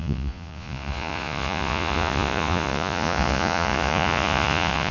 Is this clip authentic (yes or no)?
no